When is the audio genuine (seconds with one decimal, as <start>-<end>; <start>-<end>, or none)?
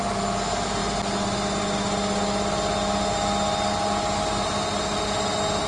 0.0-5.7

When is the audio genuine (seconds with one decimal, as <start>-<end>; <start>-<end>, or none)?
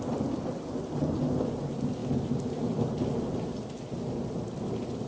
0.0-5.1